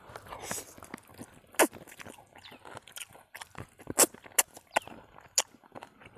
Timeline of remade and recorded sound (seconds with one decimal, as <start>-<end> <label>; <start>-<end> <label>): 0.0-6.2 recorded